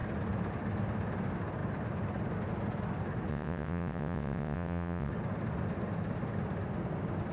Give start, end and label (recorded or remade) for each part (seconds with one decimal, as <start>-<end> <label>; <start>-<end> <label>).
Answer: 0.0-3.3 recorded; 3.3-5.1 remade; 5.1-7.3 recorded